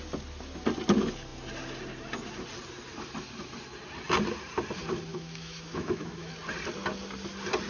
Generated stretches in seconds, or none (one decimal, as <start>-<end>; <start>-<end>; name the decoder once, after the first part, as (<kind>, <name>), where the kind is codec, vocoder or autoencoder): 5.1-6.3 (autoencoder, DAC-VAE)